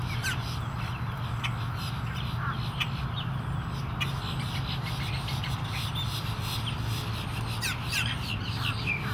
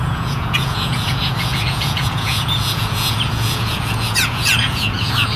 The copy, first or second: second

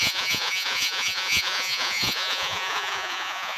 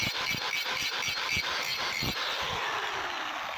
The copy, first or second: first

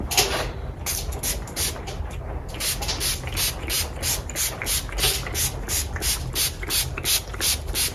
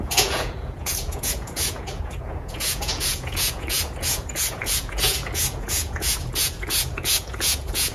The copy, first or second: second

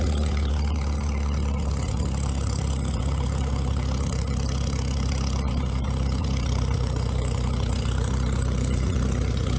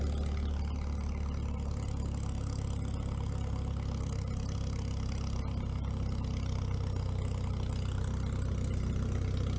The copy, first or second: first